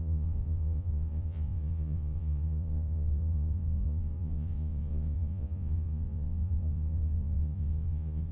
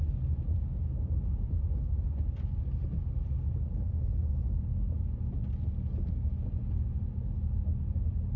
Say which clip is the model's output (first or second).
first